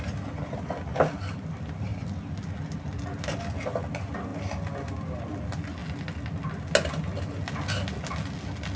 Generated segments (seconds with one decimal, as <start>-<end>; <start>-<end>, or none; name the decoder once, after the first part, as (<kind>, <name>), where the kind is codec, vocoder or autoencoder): none